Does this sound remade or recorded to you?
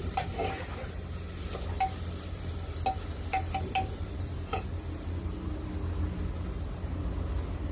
recorded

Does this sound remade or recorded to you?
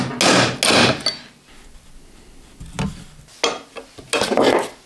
recorded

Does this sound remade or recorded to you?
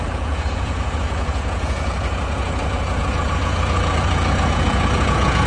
remade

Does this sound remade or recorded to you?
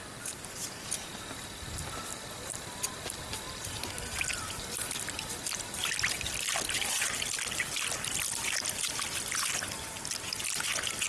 recorded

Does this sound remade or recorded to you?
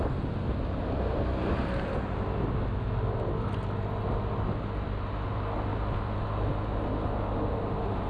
recorded